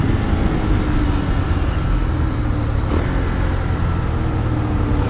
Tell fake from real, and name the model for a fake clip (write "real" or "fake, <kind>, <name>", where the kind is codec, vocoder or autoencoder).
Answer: real